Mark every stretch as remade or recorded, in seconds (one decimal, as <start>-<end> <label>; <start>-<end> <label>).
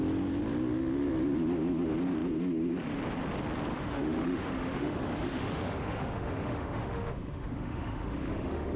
0.0-3.7 recorded; 3.7-8.8 remade